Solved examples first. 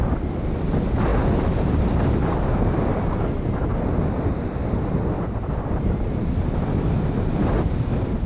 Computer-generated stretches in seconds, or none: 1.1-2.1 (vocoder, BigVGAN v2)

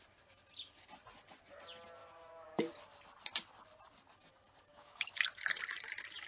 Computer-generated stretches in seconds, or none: 2.0-2.7 (autoencoder, DAC-VAE); 4.7-5.2

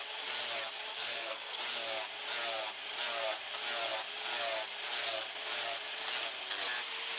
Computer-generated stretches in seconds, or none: 0.9-1.6 (codec, SNAC)

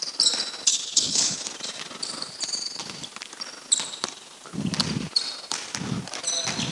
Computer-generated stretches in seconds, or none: 0.7-1.4 (codec, HILCodec)

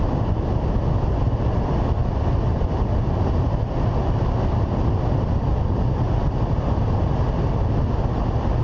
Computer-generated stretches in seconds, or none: none